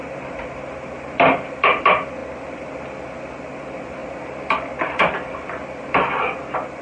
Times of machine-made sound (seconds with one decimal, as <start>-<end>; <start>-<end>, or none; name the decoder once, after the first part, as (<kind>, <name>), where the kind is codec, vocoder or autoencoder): none